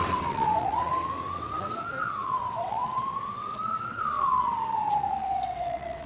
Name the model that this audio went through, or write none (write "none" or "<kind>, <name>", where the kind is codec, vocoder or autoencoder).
vocoder, WaveNeXt